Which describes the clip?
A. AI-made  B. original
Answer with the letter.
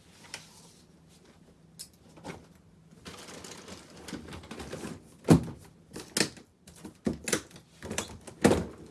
B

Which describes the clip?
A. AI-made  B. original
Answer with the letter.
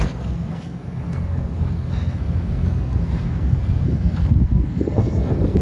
A